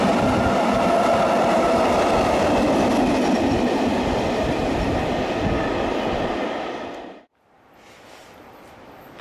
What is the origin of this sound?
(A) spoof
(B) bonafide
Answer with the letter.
B